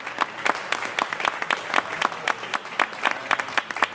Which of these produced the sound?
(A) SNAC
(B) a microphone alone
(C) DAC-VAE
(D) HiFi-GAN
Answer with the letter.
B